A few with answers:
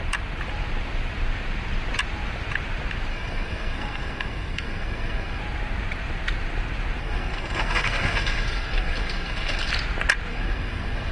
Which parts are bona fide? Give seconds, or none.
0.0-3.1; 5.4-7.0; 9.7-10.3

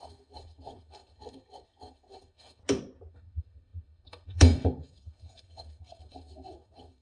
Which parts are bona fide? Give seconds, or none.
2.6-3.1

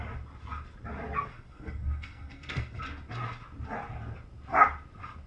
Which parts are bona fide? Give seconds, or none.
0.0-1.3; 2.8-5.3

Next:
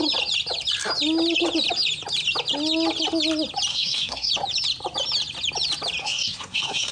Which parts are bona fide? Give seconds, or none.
0.0-3.7; 4.3-6.0